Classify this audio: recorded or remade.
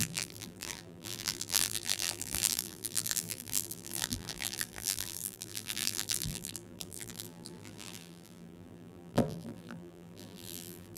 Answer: remade